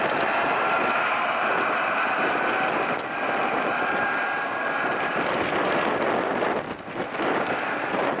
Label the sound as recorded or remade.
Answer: recorded